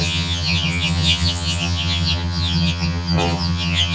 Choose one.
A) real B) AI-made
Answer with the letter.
B